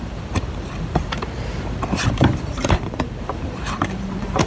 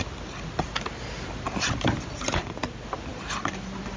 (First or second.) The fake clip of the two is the first